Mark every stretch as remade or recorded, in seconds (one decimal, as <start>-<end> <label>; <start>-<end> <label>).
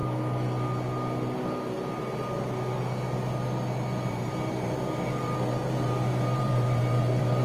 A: 0.0-4.1 recorded; 4.1-7.4 remade